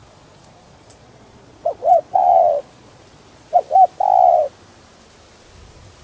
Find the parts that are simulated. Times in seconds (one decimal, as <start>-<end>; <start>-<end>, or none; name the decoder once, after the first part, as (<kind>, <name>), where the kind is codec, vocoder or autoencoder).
0.0-3.6 (vocoder, Vocos)